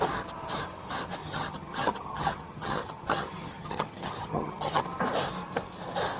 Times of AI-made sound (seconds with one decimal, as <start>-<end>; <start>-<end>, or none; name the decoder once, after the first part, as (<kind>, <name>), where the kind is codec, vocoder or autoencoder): 1.2-4.8 (vocoder, HiFi-GAN)